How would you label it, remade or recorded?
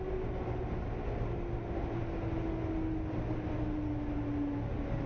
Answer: recorded